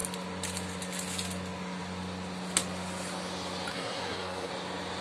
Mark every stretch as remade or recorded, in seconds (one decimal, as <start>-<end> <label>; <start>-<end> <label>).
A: 0.0-3.7 recorded; 3.7-4.5 remade; 4.5-5.0 recorded